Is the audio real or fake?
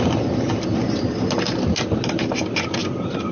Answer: real